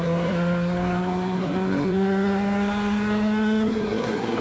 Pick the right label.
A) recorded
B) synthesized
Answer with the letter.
B